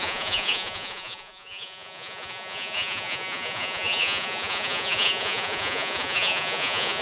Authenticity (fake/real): fake